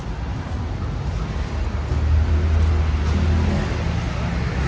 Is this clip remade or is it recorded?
recorded